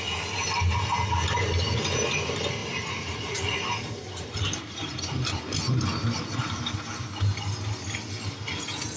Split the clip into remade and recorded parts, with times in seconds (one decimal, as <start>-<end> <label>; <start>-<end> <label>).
0.0-2.6 recorded; 2.6-6.7 remade; 6.7-9.0 recorded